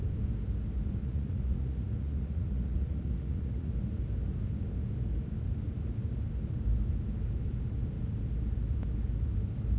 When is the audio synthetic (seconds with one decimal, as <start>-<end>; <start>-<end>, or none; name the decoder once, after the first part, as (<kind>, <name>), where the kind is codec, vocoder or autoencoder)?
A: 1.0-3.7 (vocoder, Vocos)